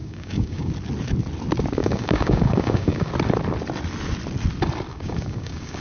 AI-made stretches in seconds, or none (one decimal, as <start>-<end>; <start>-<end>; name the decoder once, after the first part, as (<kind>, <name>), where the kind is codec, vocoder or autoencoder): 0.0-0.7 (codec, DAC); 1.8-3.1; 4.9-5.8